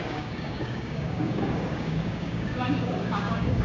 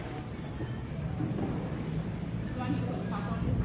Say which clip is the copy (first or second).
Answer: first